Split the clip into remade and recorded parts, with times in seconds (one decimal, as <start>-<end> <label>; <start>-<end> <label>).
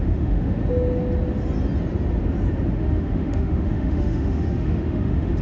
0.0-0.6 remade; 0.6-2.7 recorded; 2.7-5.4 remade